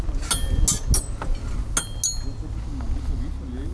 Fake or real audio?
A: real